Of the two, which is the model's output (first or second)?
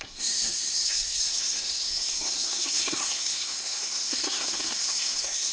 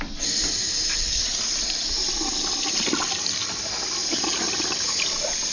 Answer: first